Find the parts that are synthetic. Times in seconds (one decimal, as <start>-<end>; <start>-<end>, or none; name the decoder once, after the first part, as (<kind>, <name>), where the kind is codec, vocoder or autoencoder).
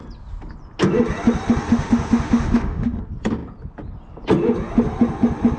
1.7-3.0 (autoencoder, DAC-VAE)